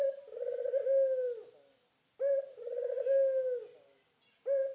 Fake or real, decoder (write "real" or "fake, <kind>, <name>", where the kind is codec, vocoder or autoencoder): real